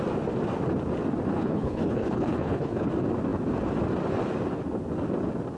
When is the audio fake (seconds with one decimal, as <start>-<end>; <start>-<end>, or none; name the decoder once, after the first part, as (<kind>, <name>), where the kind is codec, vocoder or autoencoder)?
1.3-2.9 (codec, HILCodec)